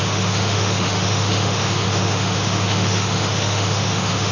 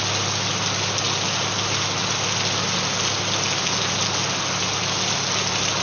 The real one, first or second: second